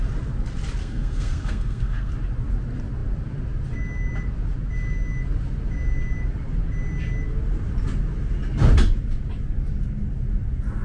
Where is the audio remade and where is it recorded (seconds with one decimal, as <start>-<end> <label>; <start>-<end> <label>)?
0.0-0.8 recorded; 0.8-2.1 remade; 2.1-10.8 recorded